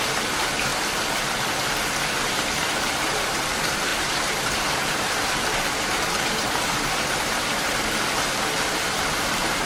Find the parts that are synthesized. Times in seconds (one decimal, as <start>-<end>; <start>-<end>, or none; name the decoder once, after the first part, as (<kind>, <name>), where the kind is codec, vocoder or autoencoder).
0.0-0.7 (vocoder, BigVGAN v2); 2.2-9.7